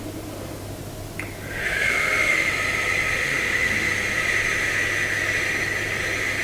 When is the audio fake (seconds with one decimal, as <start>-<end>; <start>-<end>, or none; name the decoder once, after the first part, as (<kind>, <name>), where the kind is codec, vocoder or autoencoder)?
1.6-2.5 (autoencoder, DAC-VAE); 3.2-3.9